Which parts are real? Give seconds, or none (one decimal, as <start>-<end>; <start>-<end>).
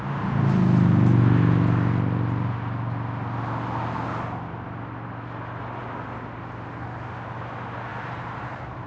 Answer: 0.0-7.9